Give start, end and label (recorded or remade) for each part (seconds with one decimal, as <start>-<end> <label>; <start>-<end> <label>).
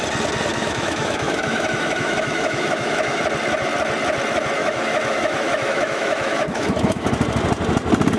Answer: 0.0-0.5 recorded; 0.5-3.2 remade; 3.2-4.6 recorded; 4.6-7.1 remade; 7.1-8.2 recorded